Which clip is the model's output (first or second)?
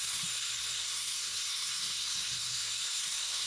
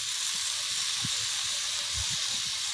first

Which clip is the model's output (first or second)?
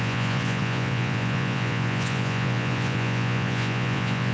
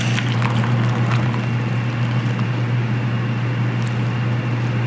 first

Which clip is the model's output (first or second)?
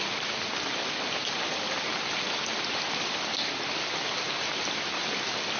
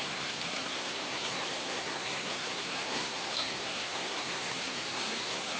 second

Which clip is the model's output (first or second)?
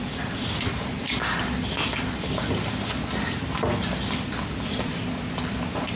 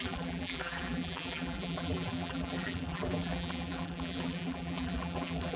second